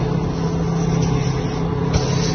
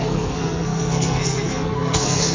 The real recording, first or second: first